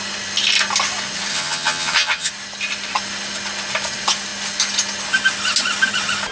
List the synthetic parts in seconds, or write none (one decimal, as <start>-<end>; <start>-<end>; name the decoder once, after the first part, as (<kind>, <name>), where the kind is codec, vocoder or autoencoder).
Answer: 1.3-2.3 (vocoder, HiFi-GAN)